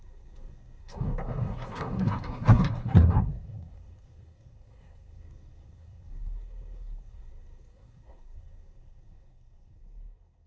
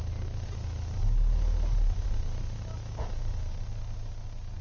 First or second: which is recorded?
second